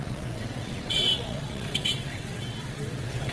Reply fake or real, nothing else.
fake